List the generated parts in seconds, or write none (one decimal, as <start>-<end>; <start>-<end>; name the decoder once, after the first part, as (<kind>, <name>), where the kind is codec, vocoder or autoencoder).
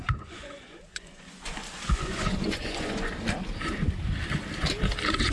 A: 0.0-3.1 (vocoder, Vocos)